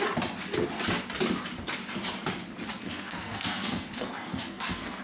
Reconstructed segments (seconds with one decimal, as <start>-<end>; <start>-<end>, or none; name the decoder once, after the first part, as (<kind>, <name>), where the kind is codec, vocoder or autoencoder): 2.8-5.0 (codec, SNAC)